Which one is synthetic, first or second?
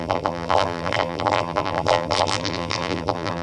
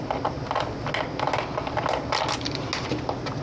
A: first